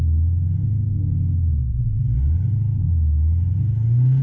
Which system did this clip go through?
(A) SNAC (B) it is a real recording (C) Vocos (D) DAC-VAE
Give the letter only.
B